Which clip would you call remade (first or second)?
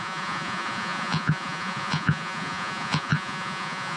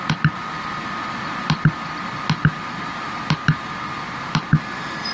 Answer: first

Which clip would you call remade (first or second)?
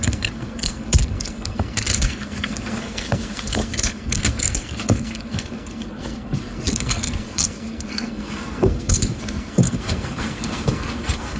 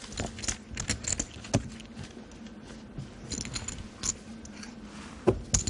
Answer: first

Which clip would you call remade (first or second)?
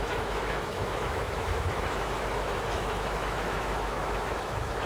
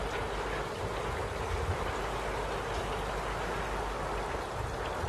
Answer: first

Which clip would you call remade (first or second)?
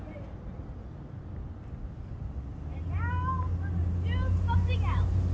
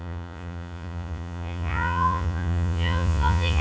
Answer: second